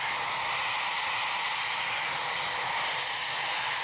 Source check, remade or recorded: recorded